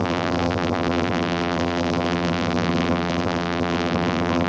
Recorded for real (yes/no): no